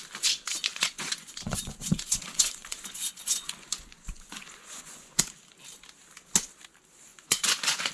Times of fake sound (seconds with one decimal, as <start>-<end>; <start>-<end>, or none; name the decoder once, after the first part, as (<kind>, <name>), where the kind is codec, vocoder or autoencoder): 0.7-5.2 (vocoder, Vocos); 7.1-7.9